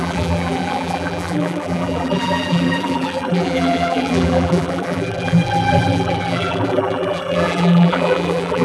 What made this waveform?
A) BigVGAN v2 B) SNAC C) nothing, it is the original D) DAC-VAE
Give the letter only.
A